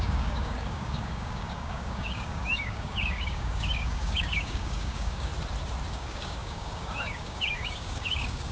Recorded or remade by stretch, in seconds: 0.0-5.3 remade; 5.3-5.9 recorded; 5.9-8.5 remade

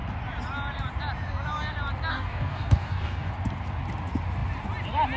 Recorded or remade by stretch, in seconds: 0.0-2.1 recorded; 2.1-3.3 remade; 3.3-5.2 recorded